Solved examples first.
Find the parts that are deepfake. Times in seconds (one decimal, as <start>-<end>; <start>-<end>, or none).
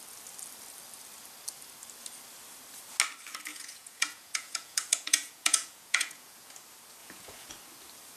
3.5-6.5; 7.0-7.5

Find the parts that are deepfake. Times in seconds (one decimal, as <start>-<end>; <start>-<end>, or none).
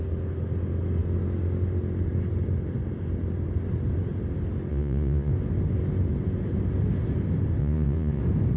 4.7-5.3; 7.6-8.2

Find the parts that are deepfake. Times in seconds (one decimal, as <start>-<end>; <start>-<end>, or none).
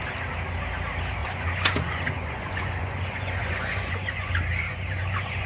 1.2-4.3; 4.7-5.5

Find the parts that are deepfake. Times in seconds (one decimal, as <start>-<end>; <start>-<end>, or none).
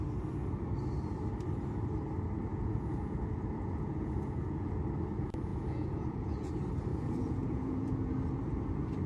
2.5-4.7; 5.5-6.5; 6.9-8.1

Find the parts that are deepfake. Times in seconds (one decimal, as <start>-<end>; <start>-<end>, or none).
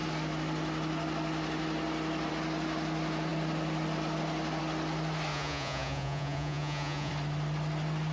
5.3-7.1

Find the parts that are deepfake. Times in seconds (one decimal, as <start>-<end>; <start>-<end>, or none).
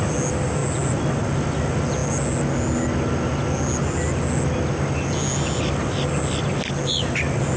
none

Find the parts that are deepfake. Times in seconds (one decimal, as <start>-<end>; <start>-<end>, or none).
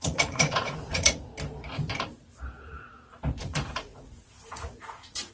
0.0-1.3; 3.4-5.3